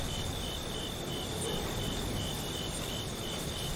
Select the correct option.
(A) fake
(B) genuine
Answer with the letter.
A